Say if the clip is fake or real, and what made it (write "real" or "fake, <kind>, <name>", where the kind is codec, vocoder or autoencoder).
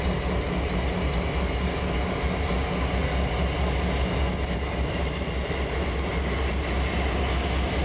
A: real